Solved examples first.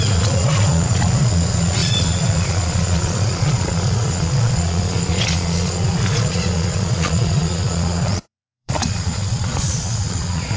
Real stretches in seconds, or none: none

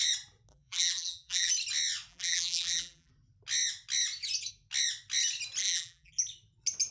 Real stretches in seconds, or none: 0.0-0.5; 1.5-2.1; 3.1-5.6; 6.1-6.9